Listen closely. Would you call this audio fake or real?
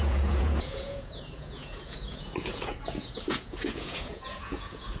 fake